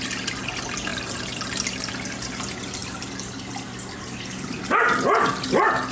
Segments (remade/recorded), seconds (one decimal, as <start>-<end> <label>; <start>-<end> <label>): 0.0-5.9 recorded